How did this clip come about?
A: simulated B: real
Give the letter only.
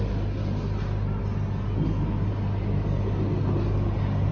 B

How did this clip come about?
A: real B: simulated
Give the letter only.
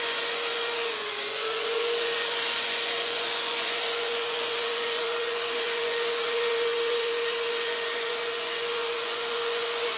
B